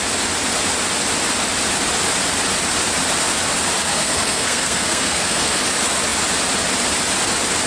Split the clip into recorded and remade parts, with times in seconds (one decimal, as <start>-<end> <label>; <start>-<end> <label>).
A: 0.0-3.9 recorded; 3.9-5.6 remade; 5.6-7.7 recorded